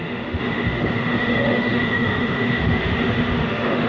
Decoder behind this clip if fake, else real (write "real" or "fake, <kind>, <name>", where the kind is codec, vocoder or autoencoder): fake, autoencoder, DAC-VAE